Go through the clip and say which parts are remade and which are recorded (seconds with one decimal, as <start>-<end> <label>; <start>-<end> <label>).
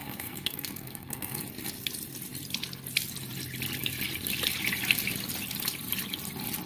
0.0-1.4 remade; 1.4-6.7 recorded